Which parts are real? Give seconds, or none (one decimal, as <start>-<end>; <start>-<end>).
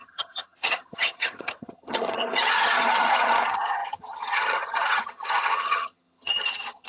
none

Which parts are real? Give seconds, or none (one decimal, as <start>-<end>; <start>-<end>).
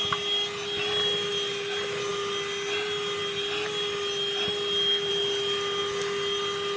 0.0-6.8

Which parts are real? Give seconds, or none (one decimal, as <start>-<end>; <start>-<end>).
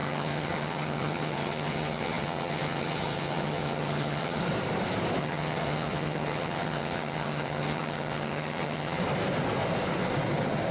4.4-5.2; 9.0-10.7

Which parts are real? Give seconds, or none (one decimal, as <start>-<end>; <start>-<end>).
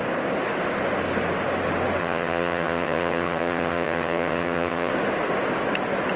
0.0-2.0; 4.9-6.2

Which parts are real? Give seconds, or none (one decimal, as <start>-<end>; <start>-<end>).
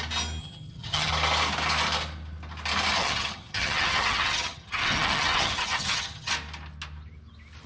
0.0-0.4; 1.1-3.0; 6.3-7.7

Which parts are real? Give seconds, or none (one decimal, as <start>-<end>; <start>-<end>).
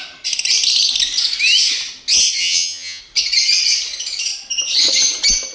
0.0-2.4; 3.0-5.5